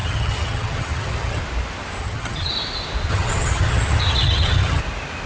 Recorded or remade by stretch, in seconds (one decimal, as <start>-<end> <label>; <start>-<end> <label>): 0.0-1.4 remade; 1.4-2.0 recorded; 2.0-2.5 remade; 2.5-3.1 recorded; 3.1-4.8 remade; 4.8-5.3 recorded